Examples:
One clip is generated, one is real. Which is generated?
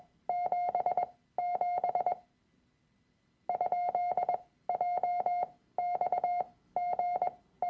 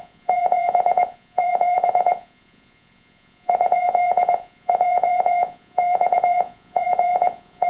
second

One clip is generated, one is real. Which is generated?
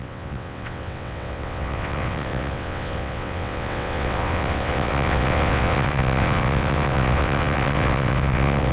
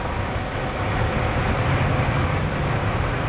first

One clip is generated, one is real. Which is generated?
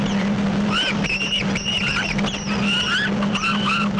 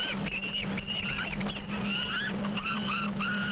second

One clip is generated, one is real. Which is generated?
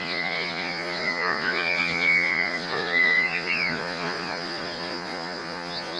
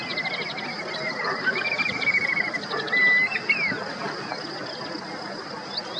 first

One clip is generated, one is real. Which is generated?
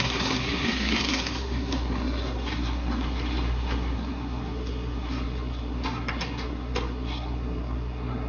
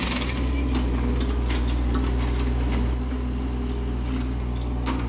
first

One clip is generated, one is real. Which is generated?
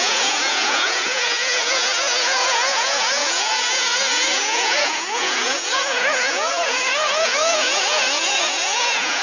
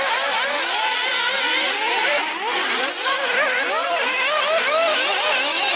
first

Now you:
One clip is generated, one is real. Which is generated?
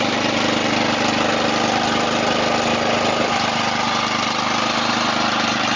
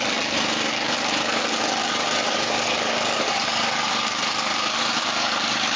second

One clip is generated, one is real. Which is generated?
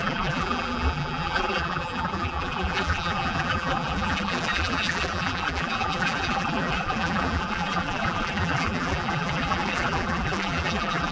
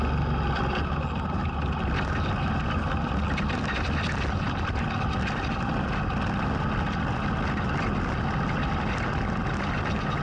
first